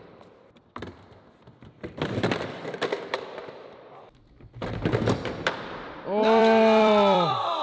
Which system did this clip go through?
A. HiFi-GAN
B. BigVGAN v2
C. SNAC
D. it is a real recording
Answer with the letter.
B